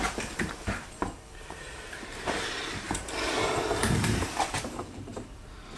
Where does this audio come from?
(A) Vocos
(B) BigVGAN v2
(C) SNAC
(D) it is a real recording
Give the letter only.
B